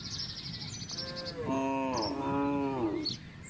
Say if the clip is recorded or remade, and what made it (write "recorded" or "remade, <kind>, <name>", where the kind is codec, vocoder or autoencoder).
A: recorded